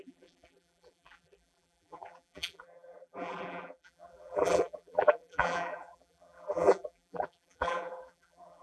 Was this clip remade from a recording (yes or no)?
yes